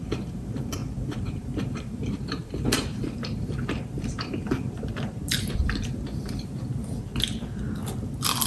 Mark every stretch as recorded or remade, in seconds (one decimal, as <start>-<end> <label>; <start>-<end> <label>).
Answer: 0.0-7.1 remade; 7.1-8.5 recorded